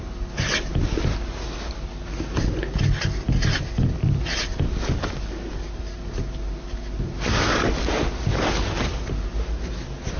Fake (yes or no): no